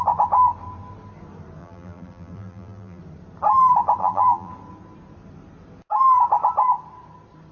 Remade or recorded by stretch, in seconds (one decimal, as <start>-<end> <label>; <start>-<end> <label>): 0.0-1.6 recorded; 1.6-3.0 remade; 3.0-4.0 recorded; 4.0-4.5 remade; 4.5-7.5 recorded